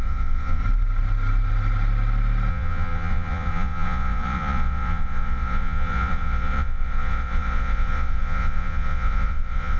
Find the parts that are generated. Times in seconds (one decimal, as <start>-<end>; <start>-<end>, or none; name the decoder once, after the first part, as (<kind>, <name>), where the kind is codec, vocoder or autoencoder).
0.0-0.6 (vocoder, Vocos); 2.5-9.8